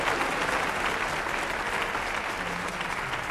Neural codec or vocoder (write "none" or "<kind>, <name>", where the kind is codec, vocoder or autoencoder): none